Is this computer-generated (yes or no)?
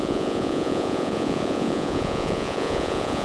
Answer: yes